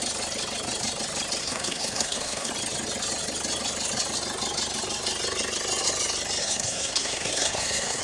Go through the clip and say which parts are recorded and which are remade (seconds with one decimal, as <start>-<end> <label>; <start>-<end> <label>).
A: 0.0-1.4 recorded; 1.4-2.5 remade; 2.5-6.4 recorded; 6.4-8.0 remade